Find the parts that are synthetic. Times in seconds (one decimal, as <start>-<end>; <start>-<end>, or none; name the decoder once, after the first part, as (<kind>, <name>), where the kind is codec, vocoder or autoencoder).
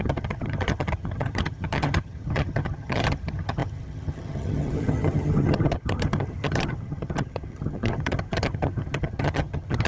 0.0-9.9 (vocoder, HiFi-GAN)